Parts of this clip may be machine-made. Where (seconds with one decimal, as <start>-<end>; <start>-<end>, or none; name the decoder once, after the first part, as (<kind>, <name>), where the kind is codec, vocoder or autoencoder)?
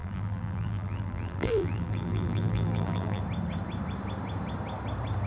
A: 0.0-3.2 (vocoder, BigVGAN v2)